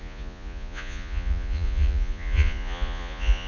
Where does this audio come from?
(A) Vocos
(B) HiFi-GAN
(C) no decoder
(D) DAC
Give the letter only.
A